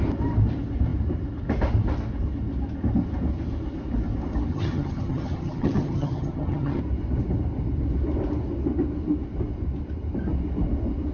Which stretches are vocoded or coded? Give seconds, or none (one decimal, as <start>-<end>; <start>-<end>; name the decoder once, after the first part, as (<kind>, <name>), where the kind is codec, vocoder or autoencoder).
4.5-6.8 (vocoder, HiFi-GAN)